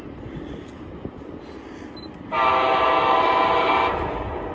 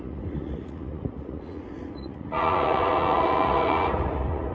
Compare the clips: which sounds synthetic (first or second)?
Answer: second